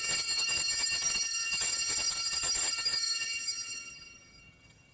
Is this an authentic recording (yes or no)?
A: no